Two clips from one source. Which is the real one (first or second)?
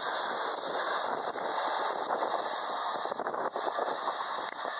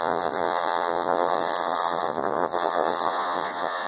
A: first